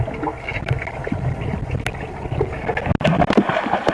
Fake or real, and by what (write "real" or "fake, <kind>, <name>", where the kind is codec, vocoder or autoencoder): real